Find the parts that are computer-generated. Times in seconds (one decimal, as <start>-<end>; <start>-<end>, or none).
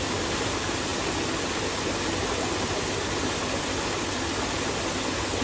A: none